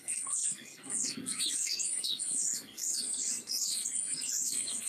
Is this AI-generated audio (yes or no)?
yes